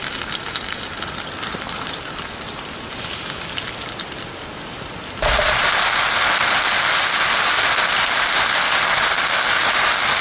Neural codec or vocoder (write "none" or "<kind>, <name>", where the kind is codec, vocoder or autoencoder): none